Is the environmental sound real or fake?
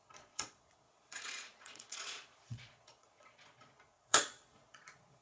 fake